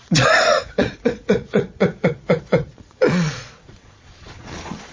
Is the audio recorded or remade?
remade